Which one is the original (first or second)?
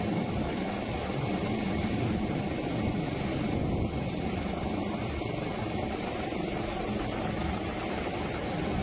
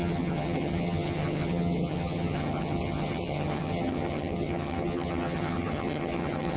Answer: first